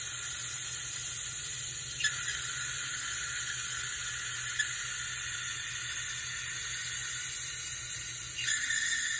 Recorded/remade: recorded